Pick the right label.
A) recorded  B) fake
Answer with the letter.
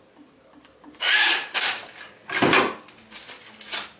A